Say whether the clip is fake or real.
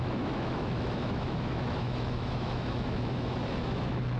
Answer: fake